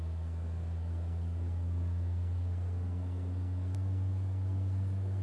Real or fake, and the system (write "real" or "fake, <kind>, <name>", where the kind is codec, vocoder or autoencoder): fake, codec, SNAC